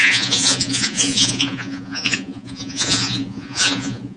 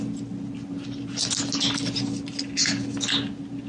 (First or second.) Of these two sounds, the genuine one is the second